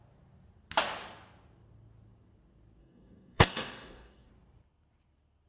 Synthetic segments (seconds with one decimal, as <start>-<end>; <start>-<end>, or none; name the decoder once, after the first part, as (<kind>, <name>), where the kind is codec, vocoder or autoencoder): 2.8-4.3 (codec, DAC)